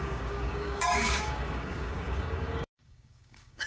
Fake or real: fake